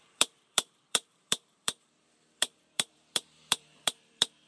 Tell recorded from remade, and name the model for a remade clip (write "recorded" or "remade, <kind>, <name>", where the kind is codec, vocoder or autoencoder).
remade, vocoder, BigVGAN v2